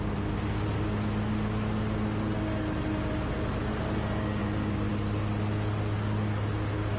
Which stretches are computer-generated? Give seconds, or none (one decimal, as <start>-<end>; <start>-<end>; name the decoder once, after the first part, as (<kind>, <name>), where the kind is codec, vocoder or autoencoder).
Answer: 4.4-4.9 (vocoder, BigVGAN v2)